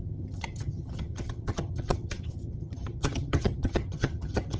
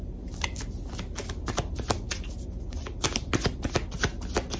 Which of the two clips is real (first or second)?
second